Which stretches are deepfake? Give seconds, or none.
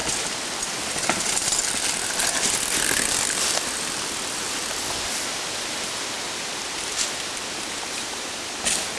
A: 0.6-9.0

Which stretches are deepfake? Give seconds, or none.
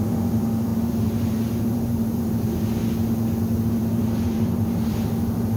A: 0.0-2.8; 3.7-5.6